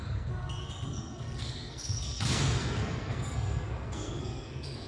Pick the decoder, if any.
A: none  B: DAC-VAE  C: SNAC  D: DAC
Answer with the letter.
C